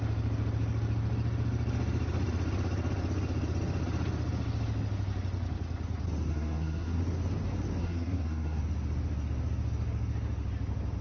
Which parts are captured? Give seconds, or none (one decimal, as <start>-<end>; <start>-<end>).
0.0-6.3; 7.0-7.8; 8.6-11.0